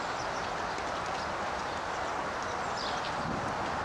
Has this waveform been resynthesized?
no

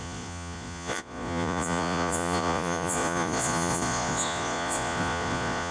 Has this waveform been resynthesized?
yes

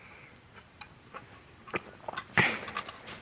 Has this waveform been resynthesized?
no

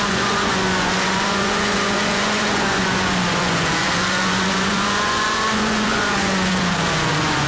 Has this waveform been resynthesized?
yes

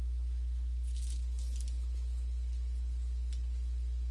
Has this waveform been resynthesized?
no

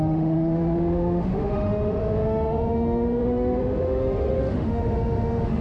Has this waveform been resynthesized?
yes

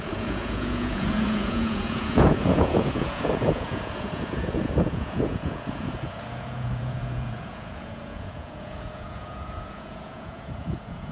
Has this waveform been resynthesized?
yes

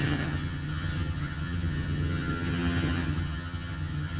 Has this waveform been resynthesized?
yes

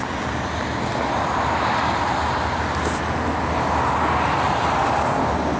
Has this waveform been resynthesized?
no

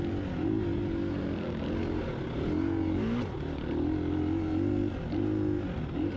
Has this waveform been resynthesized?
no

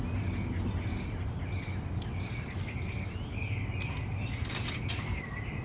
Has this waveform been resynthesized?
no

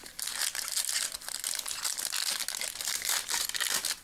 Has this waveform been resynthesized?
no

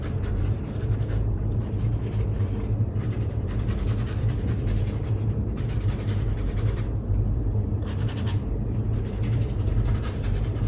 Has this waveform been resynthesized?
yes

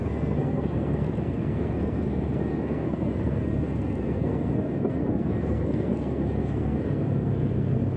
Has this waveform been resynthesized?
yes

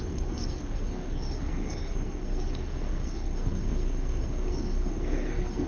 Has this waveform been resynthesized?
yes